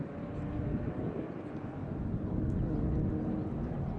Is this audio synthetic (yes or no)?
no